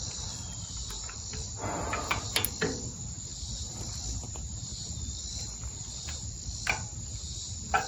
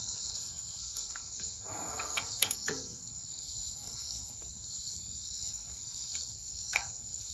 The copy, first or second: second